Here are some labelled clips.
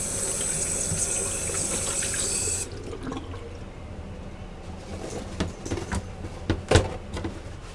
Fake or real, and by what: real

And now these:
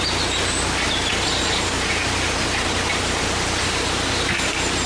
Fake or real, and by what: real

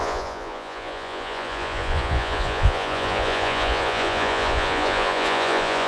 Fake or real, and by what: fake, vocoder, Vocos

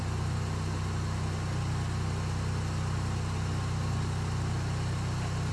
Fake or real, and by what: real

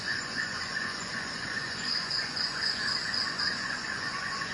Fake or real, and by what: fake, vocoder, Vocos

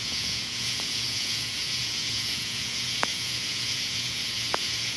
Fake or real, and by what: fake, vocoder, Vocos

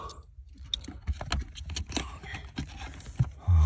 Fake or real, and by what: real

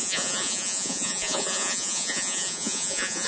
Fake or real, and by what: fake, vocoder, Vocos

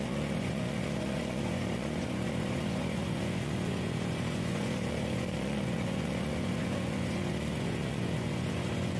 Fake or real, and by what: fake, vocoder, Vocos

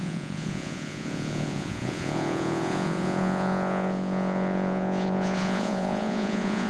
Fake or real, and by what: fake, vocoder, Vocos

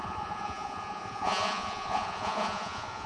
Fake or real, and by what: fake, vocoder, Vocos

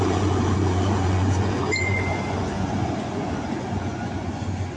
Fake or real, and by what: fake, vocoder, Vocos